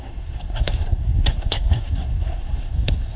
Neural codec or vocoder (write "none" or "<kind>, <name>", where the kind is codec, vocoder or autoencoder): codec, SNAC